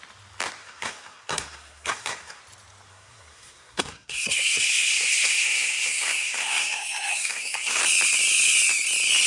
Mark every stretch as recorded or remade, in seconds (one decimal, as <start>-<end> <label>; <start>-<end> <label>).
0.0-0.6 recorded; 0.6-2.4 remade; 2.4-2.9 recorded; 2.9-7.8 remade; 7.8-9.3 recorded